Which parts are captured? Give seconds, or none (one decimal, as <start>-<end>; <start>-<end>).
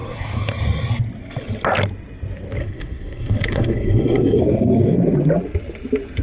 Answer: 0.0-2.6; 4.4-6.2